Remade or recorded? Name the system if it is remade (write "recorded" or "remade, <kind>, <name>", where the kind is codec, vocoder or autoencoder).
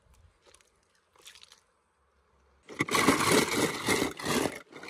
recorded